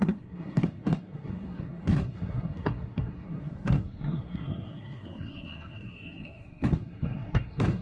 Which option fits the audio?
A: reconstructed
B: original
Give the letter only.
A